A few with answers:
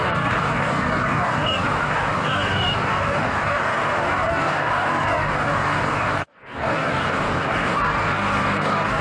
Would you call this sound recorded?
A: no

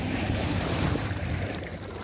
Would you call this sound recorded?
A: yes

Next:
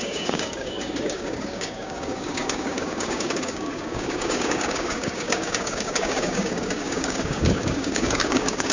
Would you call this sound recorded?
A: no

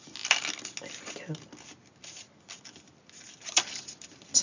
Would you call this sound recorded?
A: yes